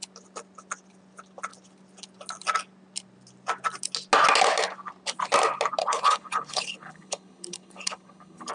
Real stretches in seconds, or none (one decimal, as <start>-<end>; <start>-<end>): 0.0-5.8